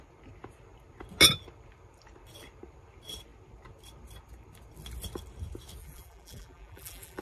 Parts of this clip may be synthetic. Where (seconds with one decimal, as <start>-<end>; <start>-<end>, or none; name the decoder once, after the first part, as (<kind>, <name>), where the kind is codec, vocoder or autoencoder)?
5.8-7.2 (vocoder, BigVGAN v2)